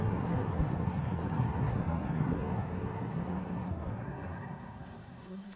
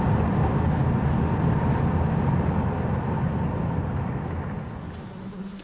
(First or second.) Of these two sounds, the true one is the second